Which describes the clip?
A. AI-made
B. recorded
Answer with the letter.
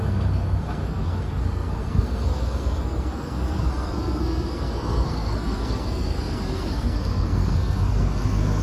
A